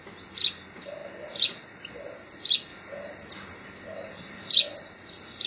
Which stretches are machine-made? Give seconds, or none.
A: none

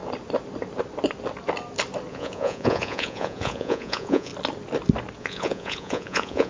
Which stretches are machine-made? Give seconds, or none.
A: 2.1-4.3 (vocoder, Vocos); 5.2-6.5